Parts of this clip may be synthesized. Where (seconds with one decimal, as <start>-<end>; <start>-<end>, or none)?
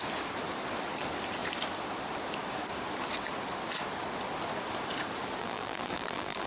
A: 5.4-6.5